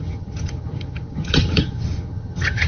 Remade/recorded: remade